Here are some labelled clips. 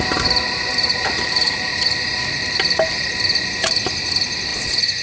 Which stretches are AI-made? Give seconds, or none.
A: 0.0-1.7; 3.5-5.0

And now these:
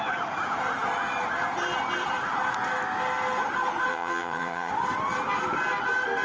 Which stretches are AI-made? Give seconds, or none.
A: 3.9-4.7

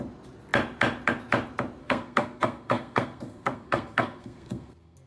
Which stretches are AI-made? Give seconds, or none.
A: 1.8-5.1

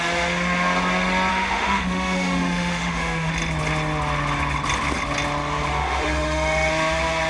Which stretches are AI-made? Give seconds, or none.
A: 1.3-3.3; 5.7-6.7

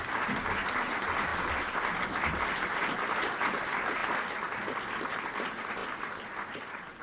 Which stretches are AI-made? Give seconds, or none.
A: none

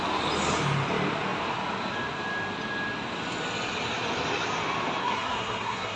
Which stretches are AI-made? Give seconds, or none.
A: 5.0-6.0

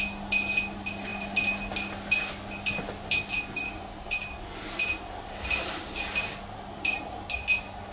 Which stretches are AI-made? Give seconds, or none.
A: none